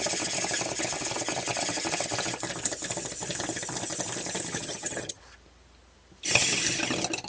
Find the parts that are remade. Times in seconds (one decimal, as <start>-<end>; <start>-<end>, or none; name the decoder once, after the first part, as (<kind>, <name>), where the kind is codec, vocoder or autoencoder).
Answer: 4.5-5.2 (vocoder, HiFi-GAN)